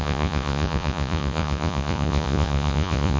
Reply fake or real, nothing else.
fake